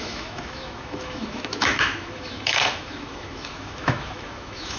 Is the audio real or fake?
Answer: fake